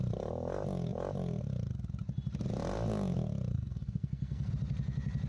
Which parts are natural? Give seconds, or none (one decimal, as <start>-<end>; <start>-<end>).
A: 0.0-3.5; 4.5-5.3

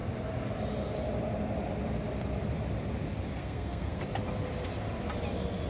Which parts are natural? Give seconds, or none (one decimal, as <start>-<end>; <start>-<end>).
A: 0.0-3.4; 4.0-5.7

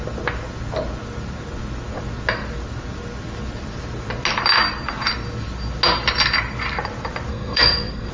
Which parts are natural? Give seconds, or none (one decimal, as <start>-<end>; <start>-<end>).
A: 0.0-7.3

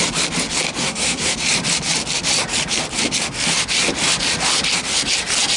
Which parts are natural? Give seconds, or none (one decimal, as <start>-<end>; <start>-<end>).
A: 0.0-0.8; 1.3-5.6

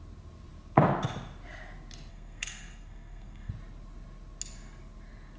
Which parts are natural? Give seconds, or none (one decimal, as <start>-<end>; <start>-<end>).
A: 0.0-2.1; 3.5-5.4

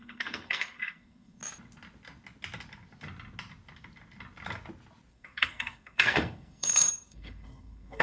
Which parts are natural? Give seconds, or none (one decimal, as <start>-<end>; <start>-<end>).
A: 1.4-5.1

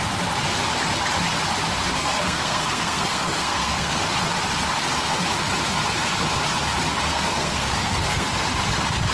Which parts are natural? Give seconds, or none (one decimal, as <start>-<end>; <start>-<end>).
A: 0.0-2.0; 4.0-7.1; 8.3-9.1